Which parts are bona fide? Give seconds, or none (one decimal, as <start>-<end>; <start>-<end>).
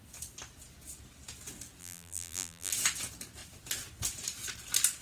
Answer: 0.0-1.8; 2.7-5.0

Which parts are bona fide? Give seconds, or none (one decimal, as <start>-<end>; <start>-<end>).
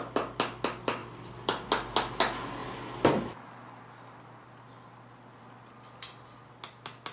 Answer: 0.0-1.0; 1.7-7.1